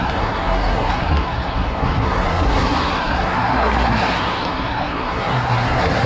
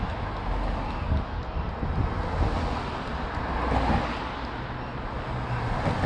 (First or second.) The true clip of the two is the second